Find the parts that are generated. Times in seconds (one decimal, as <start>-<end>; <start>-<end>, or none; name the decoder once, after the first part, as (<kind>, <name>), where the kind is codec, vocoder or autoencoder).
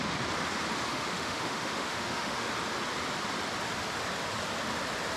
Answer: 0.9-2.5 (autoencoder, DAC-VAE)